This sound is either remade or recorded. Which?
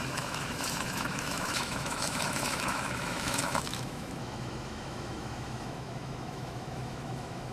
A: remade